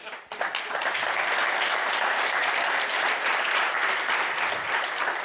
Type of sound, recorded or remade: recorded